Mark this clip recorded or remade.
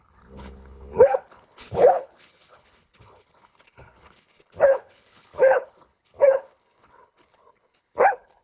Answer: remade